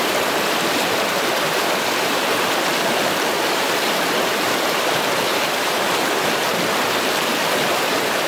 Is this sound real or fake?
fake